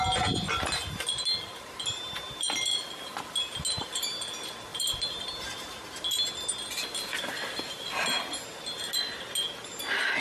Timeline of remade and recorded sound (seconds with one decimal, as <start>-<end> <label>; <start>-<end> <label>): 0.0-4.7 recorded; 4.7-5.8 remade; 5.8-10.2 recorded